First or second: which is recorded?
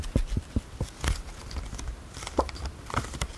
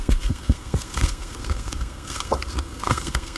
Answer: first